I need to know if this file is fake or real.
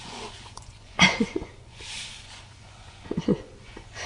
fake